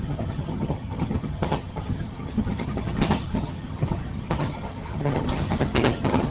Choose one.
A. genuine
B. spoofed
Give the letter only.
B